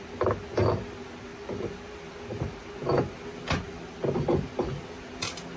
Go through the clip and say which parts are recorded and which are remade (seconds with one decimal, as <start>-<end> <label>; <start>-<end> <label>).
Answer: 0.0-5.6 recorded